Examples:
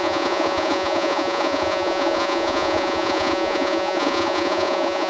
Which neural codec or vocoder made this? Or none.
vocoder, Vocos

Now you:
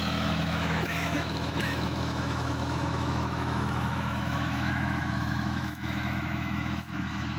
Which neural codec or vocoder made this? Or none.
autoencoder, DAC-VAE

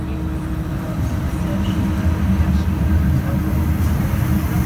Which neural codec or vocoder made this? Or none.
none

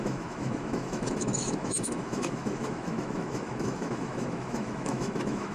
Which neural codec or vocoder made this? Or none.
autoencoder, DAC-VAE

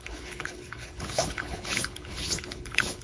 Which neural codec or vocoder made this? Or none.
codec, HILCodec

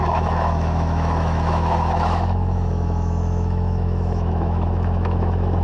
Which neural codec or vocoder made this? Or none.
autoencoder, DAC-VAE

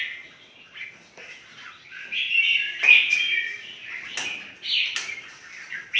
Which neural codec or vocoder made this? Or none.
none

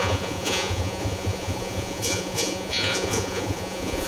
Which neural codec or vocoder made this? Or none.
vocoder, Vocos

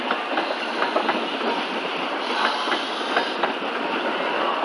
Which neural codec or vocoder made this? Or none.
none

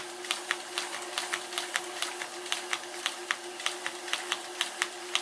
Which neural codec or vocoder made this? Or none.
none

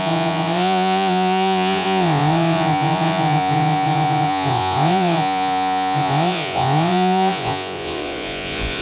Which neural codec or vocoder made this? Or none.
vocoder, Vocos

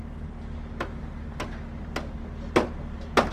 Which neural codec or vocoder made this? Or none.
none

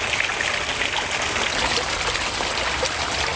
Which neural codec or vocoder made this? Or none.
none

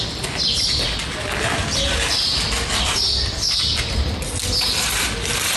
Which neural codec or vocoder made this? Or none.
none